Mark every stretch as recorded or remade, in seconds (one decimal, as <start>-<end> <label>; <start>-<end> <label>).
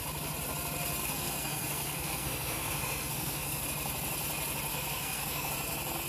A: 0.0-1.0 recorded; 1.0-3.6 remade; 3.6-4.7 recorded; 4.7-5.5 remade; 5.5-6.1 recorded